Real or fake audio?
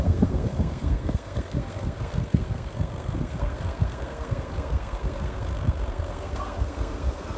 fake